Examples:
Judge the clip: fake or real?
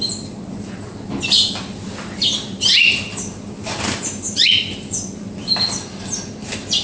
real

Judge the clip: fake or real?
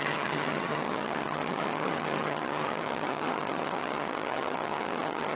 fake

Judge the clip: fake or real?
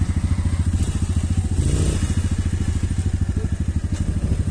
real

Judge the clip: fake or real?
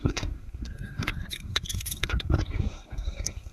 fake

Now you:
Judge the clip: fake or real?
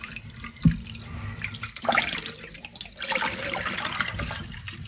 real